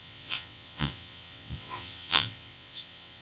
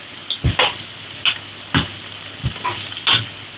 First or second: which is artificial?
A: first